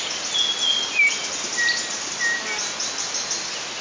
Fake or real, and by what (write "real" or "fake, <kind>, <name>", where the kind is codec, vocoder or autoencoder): real